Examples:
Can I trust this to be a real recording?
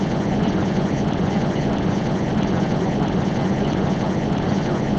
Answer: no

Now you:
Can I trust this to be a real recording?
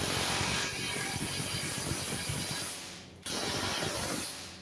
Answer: yes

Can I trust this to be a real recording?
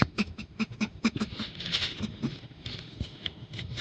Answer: no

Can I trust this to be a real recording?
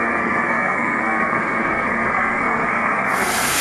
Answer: no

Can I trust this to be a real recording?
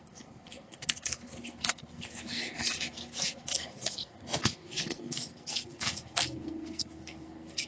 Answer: no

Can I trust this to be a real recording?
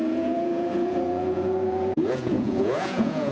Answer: no